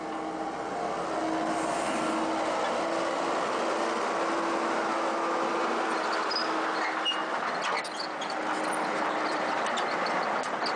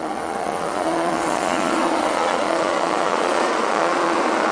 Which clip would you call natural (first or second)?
first